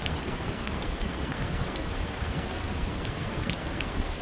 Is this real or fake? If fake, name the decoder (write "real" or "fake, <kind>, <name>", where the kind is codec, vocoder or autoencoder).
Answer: fake, codec, SNAC